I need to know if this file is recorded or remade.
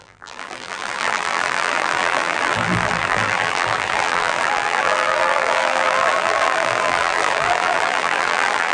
remade